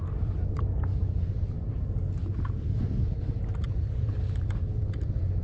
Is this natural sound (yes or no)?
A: yes